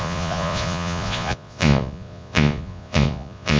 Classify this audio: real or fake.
fake